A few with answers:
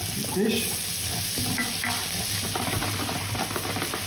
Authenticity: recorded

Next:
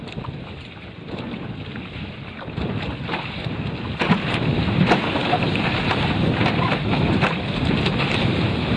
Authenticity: recorded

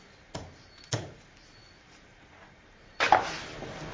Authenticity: recorded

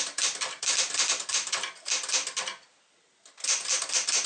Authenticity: recorded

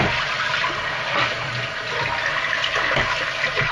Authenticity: recorded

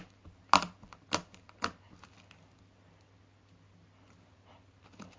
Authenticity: recorded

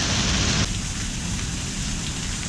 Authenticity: recorded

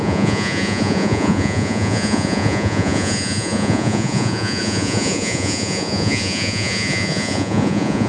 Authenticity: remade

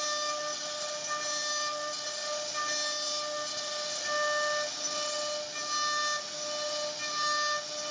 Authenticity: recorded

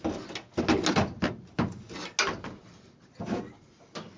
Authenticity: recorded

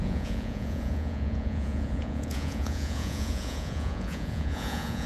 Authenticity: remade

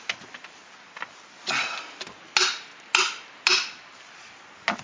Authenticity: recorded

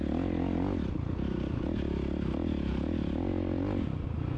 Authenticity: recorded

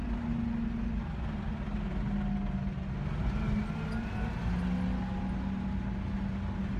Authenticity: recorded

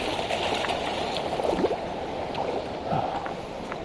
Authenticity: recorded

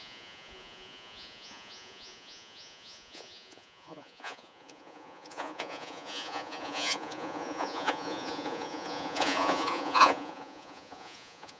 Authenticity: remade